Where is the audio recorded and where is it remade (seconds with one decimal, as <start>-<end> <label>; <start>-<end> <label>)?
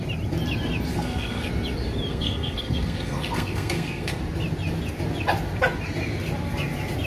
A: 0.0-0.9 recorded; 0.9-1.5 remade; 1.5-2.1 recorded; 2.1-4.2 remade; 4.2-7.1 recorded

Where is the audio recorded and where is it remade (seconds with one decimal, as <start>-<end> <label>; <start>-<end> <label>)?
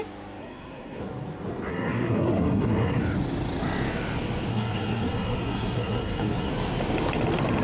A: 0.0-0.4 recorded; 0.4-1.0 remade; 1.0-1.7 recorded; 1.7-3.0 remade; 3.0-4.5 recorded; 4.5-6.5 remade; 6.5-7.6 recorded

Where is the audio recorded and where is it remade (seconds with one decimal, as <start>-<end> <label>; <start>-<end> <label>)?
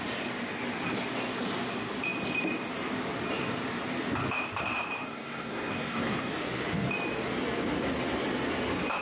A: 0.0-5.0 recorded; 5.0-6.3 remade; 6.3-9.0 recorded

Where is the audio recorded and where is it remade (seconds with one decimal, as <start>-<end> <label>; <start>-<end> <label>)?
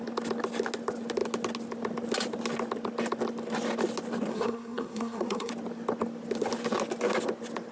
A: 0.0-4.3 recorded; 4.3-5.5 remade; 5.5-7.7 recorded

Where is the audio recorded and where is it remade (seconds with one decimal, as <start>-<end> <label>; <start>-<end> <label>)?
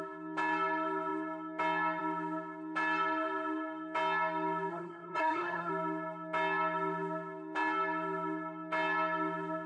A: 0.0-4.7 recorded; 4.7-5.7 remade; 5.7-9.7 recorded